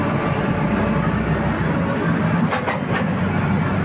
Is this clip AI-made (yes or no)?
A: no